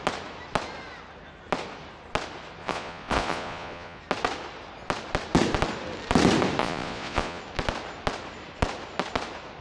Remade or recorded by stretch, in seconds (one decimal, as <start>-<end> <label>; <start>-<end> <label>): 0.0-2.6 recorded; 2.6-4.0 remade; 4.0-6.6 recorded; 6.6-7.4 remade; 7.4-9.6 recorded